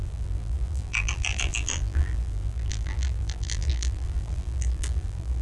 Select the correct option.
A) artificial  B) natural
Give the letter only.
A